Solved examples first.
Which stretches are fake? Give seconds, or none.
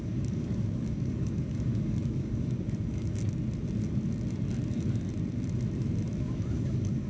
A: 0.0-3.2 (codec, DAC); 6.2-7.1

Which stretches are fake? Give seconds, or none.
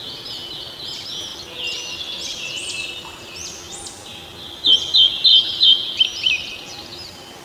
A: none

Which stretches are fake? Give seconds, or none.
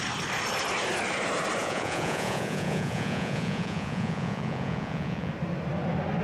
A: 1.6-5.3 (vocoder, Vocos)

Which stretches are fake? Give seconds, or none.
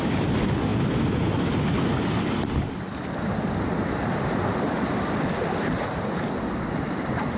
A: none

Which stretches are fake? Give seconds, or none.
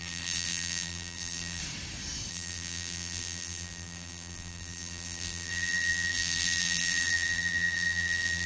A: 0.0-1.6 (vocoder, BigVGAN v2); 2.3-8.5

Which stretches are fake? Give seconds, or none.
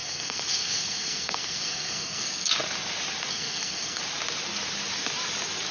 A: 0.0-2.5 (codec, SNAC); 3.3-4.0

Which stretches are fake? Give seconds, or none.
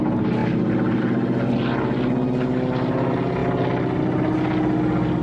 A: none